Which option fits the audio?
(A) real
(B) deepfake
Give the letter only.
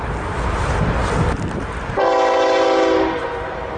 A